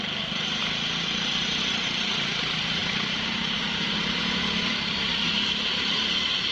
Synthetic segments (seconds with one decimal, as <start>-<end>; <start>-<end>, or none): 0.6-1.6